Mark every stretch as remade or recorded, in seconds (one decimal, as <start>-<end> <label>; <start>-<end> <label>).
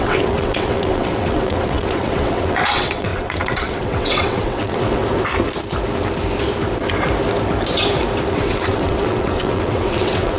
0.0-5.0 remade; 5.0-8.3 recorded; 8.3-10.4 remade